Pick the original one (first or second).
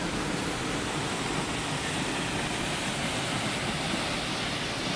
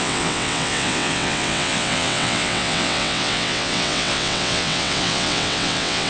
first